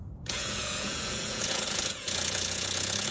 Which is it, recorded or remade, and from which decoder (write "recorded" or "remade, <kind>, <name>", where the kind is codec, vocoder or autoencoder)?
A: remade, vocoder, Vocos